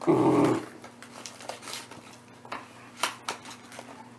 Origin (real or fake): real